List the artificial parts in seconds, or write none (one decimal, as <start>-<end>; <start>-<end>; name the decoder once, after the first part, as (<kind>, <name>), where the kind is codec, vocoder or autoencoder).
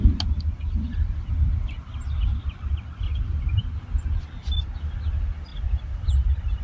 none